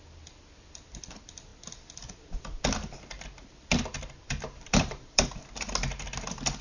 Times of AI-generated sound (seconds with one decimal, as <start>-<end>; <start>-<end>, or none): 4.2-5.2